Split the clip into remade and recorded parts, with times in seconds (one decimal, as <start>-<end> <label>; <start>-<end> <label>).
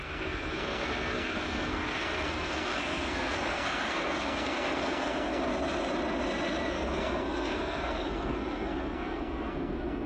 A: 0.0-5.5 remade; 5.5-6.6 recorded; 6.6-10.1 remade